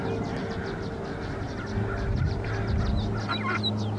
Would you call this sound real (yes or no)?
yes